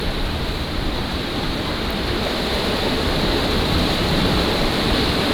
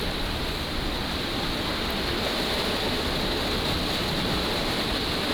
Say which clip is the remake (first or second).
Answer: first